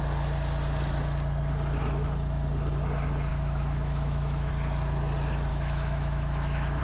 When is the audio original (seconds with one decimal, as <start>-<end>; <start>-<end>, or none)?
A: 0.0-3.3; 4.5-5.5